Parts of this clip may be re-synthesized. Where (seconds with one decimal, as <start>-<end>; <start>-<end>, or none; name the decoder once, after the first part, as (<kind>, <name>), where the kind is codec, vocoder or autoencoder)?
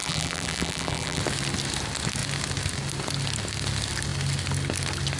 0.0-1.2 (vocoder, BigVGAN v2)